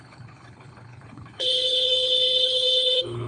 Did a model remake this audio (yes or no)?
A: yes